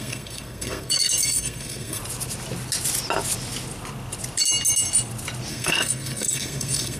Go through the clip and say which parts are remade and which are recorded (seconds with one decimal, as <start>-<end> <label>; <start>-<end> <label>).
0.0-2.0 remade; 2.0-5.5 recorded; 5.5-7.0 remade